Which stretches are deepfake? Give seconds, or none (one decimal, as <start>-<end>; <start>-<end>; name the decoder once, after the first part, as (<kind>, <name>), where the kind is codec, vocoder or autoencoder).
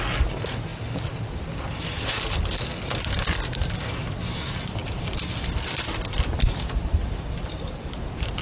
none